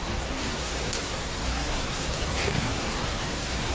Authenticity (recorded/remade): remade